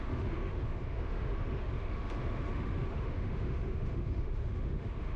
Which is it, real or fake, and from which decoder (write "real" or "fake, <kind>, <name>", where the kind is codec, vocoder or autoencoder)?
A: fake, autoencoder, DAC-VAE